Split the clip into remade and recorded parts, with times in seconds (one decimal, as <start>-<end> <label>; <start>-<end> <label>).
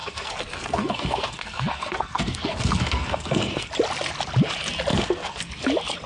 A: 0.0-3.7 remade; 3.7-4.9 recorded; 4.9-5.5 remade; 5.5-6.1 recorded